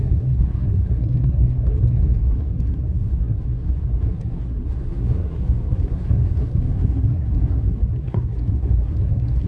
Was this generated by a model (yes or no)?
yes